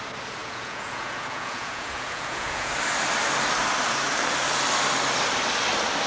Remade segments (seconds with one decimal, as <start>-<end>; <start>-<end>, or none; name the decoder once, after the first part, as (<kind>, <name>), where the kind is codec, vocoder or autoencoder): 0.4-2.7 (vocoder, Vocos)